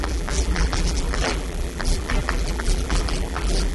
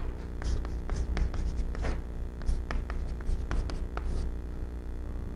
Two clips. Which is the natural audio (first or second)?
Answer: second